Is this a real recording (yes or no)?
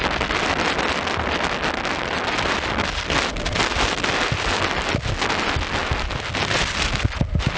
yes